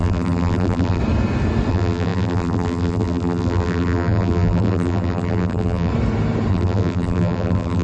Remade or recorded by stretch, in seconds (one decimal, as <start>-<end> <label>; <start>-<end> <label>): 0.0-1.0 remade; 1.0-1.7 recorded; 1.7-5.9 remade; 5.9-6.5 recorded; 6.5-7.8 remade